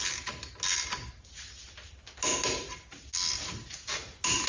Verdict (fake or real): real